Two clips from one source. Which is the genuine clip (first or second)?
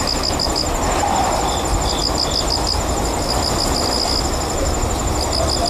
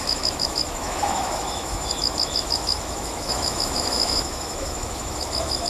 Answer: first